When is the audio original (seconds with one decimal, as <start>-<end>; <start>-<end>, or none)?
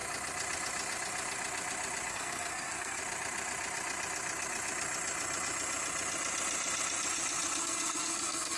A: 0.0-2.1; 3.0-7.6